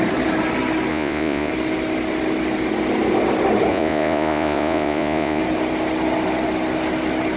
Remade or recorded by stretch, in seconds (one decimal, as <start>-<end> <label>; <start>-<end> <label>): 0.0-0.9 recorded; 0.9-1.5 remade; 1.5-3.7 recorded; 3.7-5.4 remade; 5.4-7.4 recorded